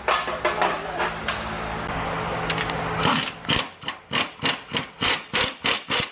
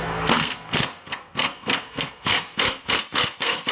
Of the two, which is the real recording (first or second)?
first